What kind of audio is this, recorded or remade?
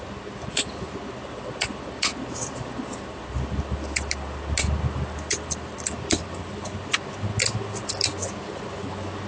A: recorded